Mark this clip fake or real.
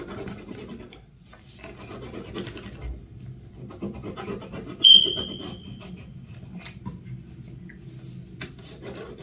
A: real